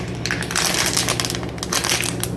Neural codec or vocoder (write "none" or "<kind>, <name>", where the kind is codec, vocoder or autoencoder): none